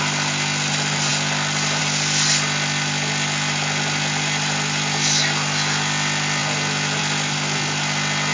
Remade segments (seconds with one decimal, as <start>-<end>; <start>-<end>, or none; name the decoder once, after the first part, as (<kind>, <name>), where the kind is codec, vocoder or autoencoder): none